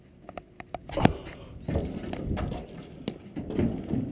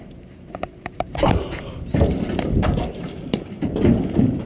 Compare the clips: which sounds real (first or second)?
first